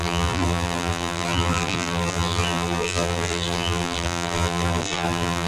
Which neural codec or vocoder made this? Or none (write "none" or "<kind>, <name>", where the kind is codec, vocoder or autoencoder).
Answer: vocoder, BigVGAN v2